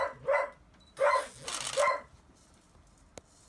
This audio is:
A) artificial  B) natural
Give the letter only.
B